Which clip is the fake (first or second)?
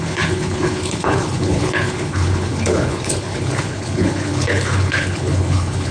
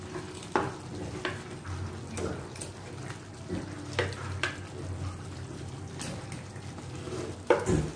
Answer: first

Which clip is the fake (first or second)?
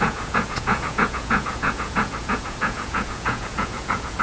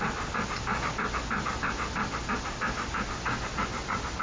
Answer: first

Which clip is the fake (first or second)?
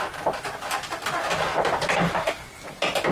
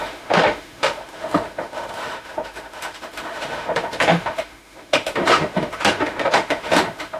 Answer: second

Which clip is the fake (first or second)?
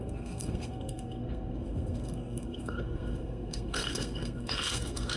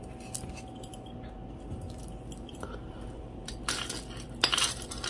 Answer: first